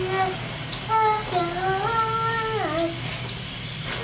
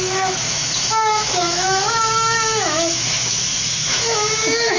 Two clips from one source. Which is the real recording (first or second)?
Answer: first